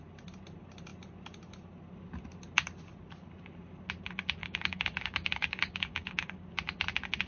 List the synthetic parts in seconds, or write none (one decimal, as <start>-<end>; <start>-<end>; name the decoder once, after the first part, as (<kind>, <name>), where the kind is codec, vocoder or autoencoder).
4.4-6.5 (codec, DAC)